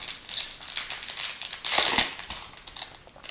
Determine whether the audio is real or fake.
real